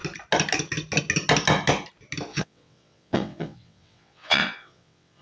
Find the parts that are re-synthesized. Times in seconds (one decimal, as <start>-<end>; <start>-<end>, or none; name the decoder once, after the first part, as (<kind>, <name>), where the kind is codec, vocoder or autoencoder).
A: 2.3-5.2 (vocoder, WaveNeXt)

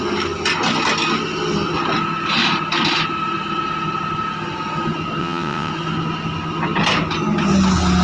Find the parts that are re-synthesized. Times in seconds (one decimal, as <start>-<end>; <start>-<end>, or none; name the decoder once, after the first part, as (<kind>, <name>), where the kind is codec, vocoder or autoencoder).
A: 5.2-5.7 (vocoder, WaveNeXt)

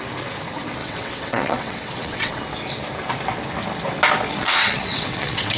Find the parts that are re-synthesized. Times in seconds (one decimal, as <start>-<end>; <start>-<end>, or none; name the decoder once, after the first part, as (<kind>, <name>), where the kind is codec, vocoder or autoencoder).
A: 0.8-2.3 (vocoder, WaveNeXt); 4.3-5.6

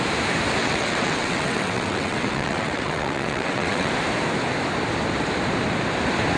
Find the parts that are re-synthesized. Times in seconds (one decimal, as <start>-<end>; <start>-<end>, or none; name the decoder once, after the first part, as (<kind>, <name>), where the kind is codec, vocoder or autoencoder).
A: 0.6-3.9 (vocoder, WaveNeXt)

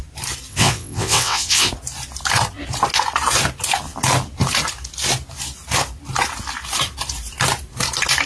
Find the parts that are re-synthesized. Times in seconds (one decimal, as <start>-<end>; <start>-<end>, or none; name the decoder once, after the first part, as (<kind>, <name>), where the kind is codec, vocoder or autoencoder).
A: 0.5-1.7 (vocoder, WaveNeXt)

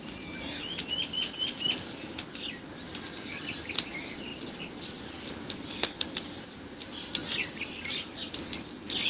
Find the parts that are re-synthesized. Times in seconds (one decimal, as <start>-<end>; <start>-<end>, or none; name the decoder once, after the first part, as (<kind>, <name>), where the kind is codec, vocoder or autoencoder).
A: none